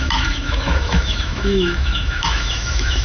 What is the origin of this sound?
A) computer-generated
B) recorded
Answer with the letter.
A